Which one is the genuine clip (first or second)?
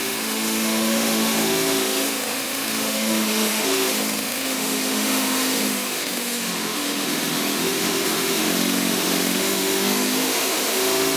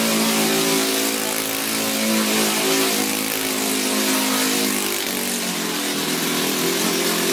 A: second